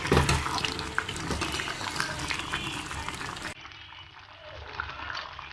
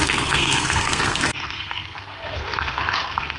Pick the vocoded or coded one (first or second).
second